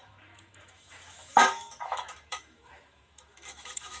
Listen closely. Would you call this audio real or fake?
fake